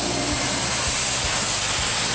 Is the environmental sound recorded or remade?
recorded